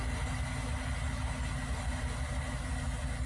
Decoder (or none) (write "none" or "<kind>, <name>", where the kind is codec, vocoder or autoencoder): none